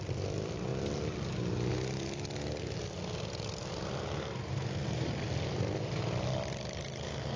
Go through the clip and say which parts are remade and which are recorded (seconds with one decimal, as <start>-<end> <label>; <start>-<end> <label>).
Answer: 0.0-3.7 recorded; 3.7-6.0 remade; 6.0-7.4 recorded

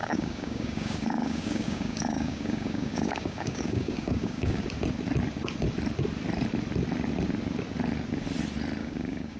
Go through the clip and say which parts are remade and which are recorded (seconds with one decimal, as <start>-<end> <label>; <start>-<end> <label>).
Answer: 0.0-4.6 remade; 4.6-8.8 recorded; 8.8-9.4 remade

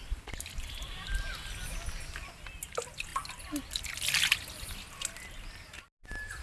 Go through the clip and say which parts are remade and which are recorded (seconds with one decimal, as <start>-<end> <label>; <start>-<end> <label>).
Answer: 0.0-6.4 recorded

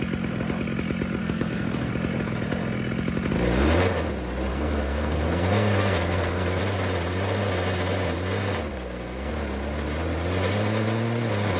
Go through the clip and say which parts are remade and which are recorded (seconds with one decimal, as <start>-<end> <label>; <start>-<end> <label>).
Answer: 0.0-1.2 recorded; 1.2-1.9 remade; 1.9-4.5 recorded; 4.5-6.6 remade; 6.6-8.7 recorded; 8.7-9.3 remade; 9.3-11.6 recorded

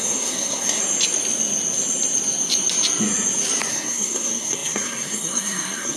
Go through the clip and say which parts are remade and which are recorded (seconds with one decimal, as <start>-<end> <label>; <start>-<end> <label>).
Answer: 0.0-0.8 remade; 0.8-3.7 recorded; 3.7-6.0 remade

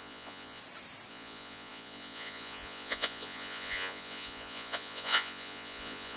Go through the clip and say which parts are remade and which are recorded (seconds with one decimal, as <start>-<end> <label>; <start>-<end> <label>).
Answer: 0.0-0.6 remade; 0.6-1.1 recorded; 1.1-6.2 remade

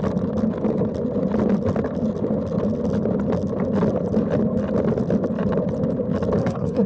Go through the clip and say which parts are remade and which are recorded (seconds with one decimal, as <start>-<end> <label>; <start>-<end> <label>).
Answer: 0.0-6.4 recorded; 6.4-6.9 remade

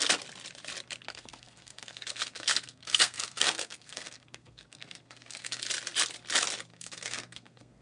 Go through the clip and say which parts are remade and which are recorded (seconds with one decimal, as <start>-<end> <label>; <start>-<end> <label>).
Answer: 0.0-1.1 recorded; 1.1-5.6 remade; 5.6-6.7 recorded; 6.7-7.8 remade